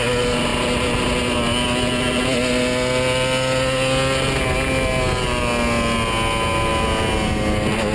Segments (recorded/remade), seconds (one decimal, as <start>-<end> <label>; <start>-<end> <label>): 0.0-7.9 recorded